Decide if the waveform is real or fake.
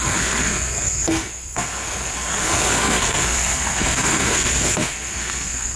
fake